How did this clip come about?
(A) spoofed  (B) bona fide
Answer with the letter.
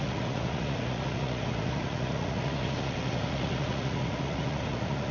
A